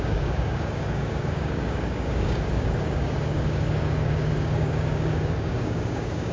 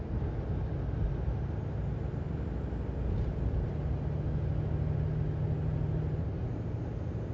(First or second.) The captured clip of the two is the second